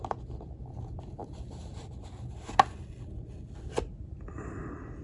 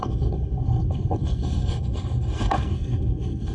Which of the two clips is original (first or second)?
first